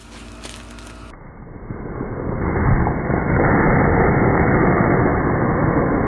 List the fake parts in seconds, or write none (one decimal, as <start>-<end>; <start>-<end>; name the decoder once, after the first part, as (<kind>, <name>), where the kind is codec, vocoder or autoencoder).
none